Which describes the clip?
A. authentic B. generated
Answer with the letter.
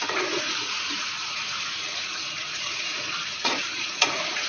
B